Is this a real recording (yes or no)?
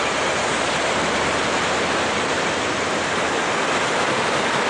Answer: yes